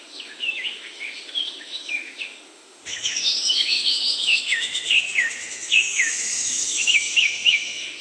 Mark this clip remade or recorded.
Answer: remade